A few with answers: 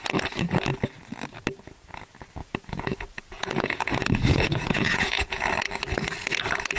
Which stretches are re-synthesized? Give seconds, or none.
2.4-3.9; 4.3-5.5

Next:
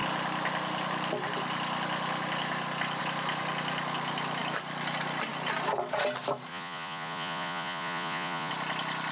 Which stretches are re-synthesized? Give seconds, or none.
6.5-8.5

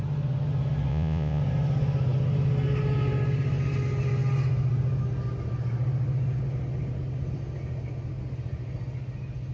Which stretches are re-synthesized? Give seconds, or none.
0.9-1.4

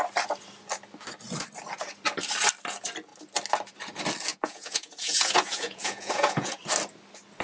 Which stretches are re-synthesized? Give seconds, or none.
4.3-6.6

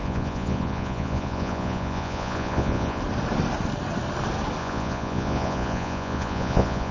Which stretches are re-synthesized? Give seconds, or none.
0.0-3.0; 4.6-6.9

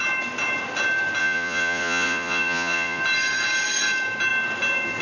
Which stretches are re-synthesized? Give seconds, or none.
1.2-3.0

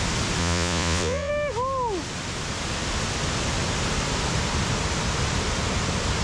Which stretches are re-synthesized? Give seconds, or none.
0.4-1.3

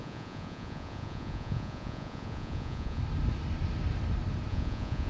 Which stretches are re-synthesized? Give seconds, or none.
0.0-3.0; 4.5-5.1